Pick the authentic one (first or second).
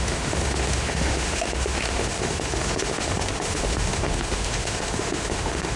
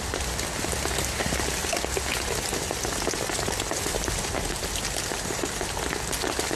second